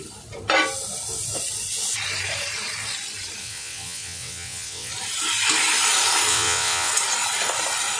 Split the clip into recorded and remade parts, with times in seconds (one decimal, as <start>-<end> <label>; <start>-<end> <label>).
0.0-3.4 recorded; 3.4-4.9 remade; 4.9-6.3 recorded; 6.3-6.9 remade; 6.9-8.0 recorded